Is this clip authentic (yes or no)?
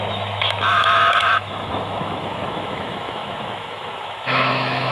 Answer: no